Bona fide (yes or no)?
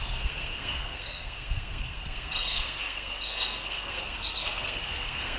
no